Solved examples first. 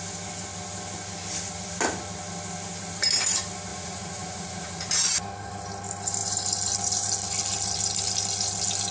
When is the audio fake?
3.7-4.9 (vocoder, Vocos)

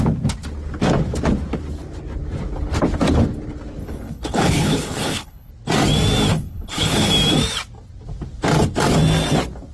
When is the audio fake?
3.8-5.5 (codec, HILCodec); 6.3-7.1

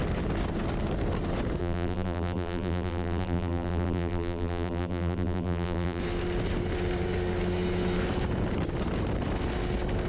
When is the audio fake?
1.6-6.0 (vocoder, BigVGAN v2)